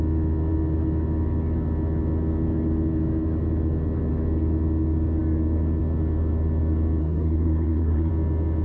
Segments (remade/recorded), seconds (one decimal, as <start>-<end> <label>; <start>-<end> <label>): 0.0-7.0 recorded; 7.0-8.1 remade; 8.1-8.6 recorded